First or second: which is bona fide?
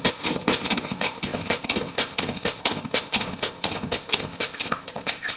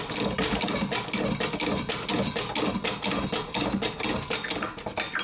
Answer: second